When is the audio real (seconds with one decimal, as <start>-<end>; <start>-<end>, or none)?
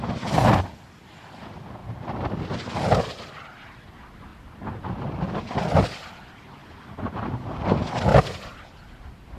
0.0-1.8; 2.5-6.6; 7.3-8.1